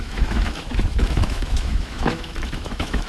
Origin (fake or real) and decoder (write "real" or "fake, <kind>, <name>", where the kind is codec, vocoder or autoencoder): fake, autoencoder, DAC-VAE